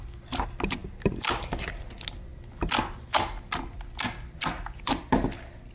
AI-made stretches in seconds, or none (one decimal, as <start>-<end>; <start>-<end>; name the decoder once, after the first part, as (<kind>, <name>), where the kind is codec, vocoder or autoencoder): 0.8-1.7 (vocoder, BigVGAN v2)